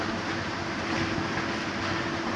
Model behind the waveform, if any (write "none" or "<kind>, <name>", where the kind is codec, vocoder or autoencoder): none